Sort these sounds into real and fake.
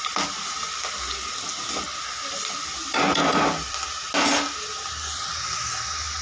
real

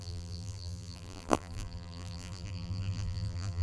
fake